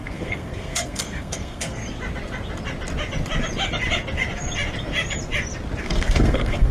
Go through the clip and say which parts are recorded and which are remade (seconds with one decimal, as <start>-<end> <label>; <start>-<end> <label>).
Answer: 0.0-1.8 remade; 1.8-5.8 recorded; 5.8-6.7 remade

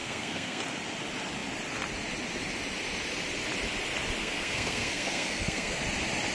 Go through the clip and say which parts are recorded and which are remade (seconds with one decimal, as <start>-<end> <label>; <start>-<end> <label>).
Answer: 0.0-0.6 remade; 0.6-4.2 recorded; 4.2-5.8 remade; 5.8-6.3 recorded